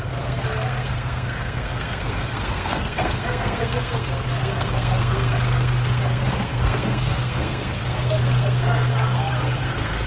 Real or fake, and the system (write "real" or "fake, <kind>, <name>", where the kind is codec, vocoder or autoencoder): fake, codec, SNAC